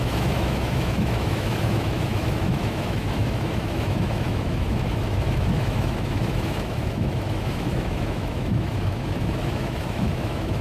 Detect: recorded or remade remade